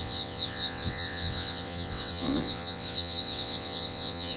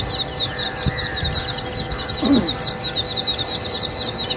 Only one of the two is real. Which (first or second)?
second